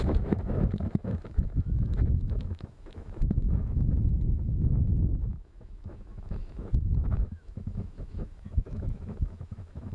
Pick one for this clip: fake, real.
fake